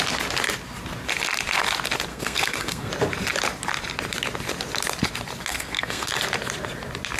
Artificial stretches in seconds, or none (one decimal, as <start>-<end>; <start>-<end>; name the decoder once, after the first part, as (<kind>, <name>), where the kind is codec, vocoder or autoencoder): 2.1-2.9 (codec, SNAC); 5.5-6.1